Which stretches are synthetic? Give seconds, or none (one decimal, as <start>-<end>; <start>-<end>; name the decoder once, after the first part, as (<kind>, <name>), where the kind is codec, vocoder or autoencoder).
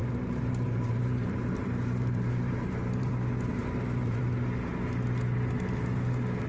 0.0-3.1 (vocoder, BigVGAN v2); 3.6-4.2